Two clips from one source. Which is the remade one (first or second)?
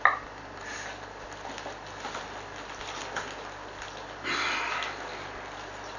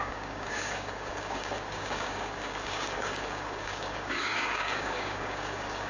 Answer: second